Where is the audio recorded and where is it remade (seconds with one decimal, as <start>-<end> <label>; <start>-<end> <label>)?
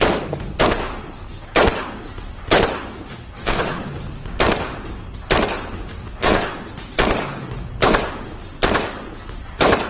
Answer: 0.0-3.1 recorded; 3.1-3.9 remade; 3.9-6.0 recorded; 6.0-6.7 remade; 6.7-9.9 recorded